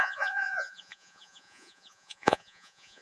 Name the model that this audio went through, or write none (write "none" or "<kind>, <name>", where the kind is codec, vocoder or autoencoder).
vocoder, Vocos